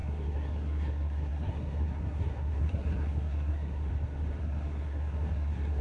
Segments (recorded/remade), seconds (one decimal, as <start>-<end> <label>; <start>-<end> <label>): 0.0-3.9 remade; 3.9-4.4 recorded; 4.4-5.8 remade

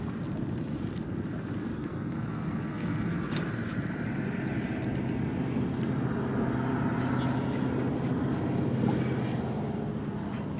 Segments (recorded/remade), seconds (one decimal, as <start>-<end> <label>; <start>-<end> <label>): 0.0-1.8 recorded; 1.8-3.2 remade; 3.2-10.6 recorded

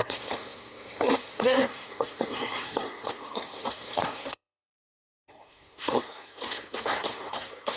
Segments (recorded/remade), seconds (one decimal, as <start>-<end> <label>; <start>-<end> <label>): 0.0-7.8 remade